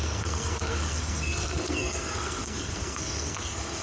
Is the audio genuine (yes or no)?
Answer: no